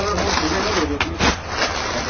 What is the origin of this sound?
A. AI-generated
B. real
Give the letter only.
B